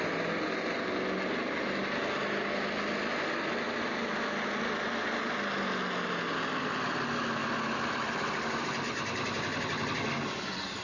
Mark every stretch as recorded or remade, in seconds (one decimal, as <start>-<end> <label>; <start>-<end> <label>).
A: 0.0-10.8 recorded